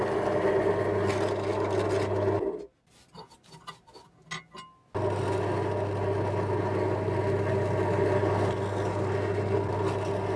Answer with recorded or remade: recorded